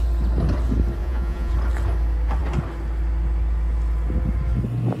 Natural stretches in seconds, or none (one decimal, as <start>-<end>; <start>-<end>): 0.0-1.0; 1.5-5.0